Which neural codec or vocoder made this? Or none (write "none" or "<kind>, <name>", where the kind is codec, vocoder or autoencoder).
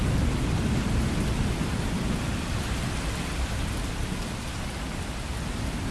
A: none